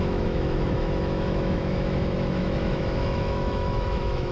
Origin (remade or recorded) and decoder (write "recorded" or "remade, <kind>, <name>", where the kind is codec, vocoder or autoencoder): remade, autoencoder, DAC-VAE